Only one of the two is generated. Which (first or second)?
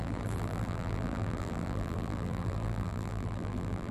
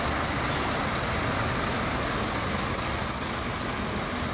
first